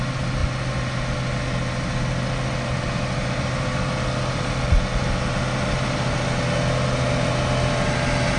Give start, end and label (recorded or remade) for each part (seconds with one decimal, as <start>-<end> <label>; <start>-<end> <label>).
0.0-8.4 recorded